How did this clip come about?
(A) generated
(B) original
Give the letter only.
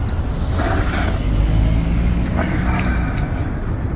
B